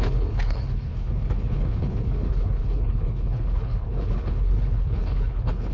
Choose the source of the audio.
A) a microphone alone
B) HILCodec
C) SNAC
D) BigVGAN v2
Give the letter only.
B